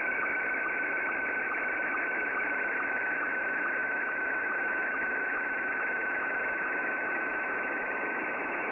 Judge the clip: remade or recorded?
remade